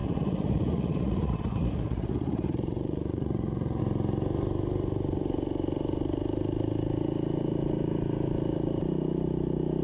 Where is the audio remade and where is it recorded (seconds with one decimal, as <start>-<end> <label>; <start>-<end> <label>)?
0.0-3.8 remade; 3.8-9.8 recorded